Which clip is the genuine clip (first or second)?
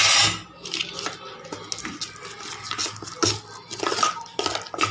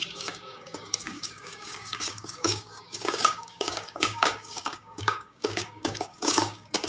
first